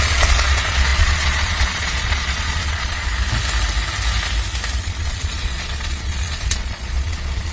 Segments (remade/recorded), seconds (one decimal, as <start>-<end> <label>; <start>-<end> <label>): 0.0-3.1 remade; 3.1-4.8 recorded; 4.8-7.5 remade